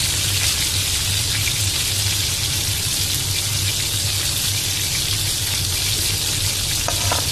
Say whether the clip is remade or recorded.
recorded